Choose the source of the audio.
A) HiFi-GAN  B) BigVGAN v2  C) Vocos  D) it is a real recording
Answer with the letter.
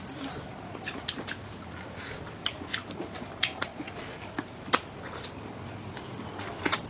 D